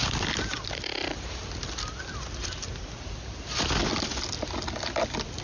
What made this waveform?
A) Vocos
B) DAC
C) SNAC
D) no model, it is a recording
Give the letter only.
D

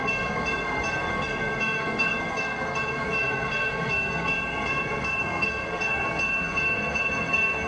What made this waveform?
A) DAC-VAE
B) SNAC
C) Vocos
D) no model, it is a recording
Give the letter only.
B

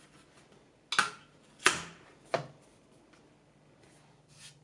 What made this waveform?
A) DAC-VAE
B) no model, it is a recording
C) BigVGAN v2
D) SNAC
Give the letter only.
B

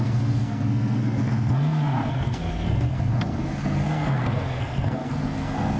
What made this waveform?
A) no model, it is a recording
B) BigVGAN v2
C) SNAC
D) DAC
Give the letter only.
C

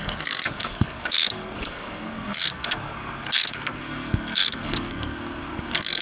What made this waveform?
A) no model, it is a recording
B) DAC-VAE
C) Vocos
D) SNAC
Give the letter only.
D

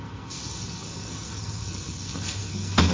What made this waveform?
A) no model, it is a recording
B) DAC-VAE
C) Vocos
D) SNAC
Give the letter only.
D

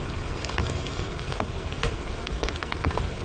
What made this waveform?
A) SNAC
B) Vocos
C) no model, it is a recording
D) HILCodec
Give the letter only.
A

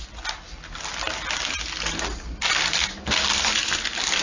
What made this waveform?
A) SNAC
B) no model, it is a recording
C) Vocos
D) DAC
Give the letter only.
B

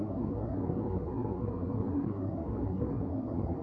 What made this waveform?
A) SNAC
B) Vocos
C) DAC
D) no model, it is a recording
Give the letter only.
A